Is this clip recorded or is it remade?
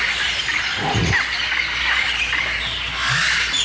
recorded